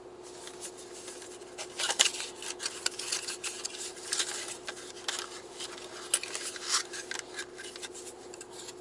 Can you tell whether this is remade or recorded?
recorded